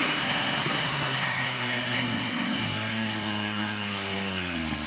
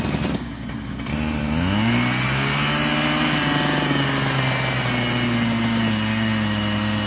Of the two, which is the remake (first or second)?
first